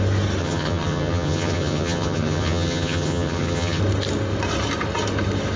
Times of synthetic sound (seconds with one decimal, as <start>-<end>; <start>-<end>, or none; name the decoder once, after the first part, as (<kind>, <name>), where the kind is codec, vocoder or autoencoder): 0.4-3.8 (vocoder, HiFi-GAN)